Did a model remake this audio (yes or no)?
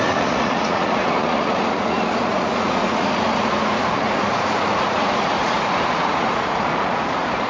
yes